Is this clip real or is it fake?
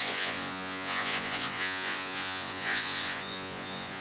fake